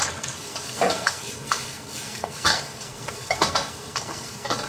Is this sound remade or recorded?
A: remade